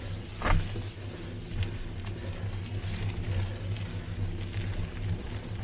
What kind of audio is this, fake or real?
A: real